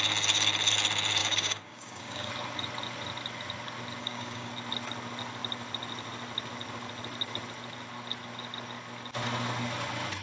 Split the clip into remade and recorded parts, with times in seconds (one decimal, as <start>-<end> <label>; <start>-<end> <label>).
0.0-1.2 recorded; 1.2-2.3 remade; 2.3-4.0 recorded; 4.0-4.5 remade; 4.5-10.2 recorded